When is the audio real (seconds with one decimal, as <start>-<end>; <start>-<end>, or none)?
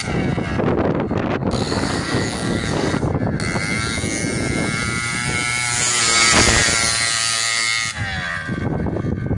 0.0-1.4; 2.9-9.4